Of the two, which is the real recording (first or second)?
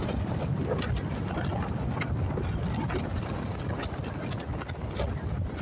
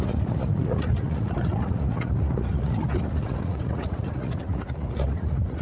first